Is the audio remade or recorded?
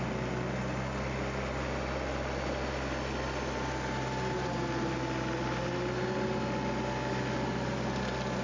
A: recorded